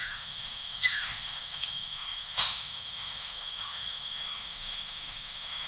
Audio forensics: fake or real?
fake